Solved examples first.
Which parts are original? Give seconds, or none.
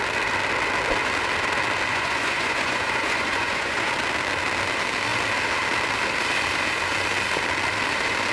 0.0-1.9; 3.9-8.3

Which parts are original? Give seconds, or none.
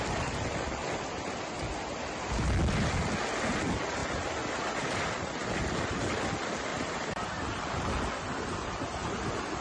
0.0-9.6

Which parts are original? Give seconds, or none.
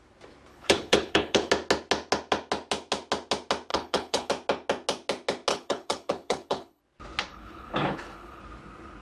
0.0-0.5; 1.5-3.7; 4.3-5.5; 6.8-7.3; 8.4-9.0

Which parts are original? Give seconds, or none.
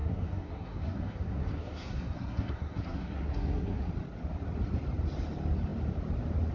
3.9-6.5